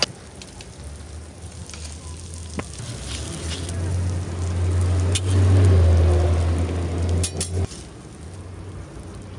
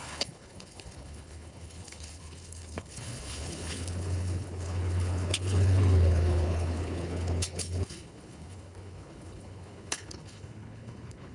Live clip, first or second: first